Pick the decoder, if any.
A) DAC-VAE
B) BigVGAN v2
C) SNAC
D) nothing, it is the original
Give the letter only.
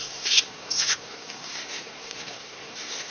C